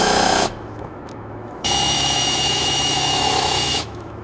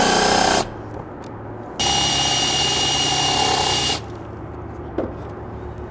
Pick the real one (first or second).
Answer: second